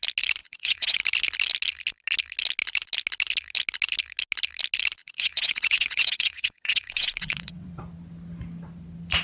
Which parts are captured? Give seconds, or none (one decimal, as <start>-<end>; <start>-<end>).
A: 0.0-0.4; 1.0-5.0; 7.8-9.2